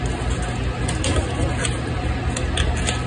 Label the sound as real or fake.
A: real